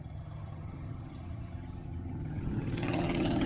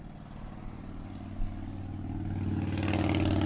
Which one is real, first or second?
second